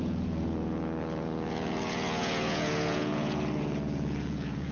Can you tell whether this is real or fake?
fake